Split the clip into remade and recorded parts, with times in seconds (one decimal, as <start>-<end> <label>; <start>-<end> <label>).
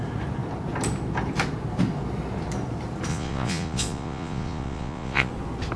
0.0-3.1 recorded; 3.1-5.3 remade; 5.3-5.8 recorded